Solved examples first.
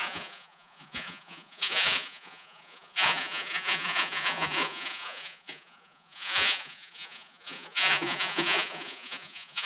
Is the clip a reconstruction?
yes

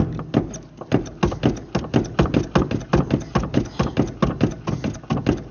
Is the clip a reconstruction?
no